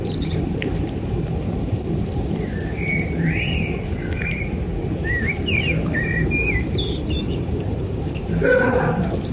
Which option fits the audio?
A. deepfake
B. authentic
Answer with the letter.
A